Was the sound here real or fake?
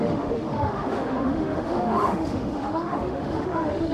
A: fake